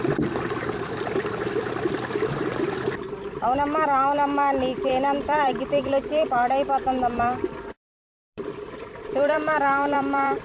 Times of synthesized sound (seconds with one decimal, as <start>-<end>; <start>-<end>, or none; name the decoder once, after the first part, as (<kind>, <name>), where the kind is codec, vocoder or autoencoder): 0.0-10.4 (vocoder, BigVGAN v2)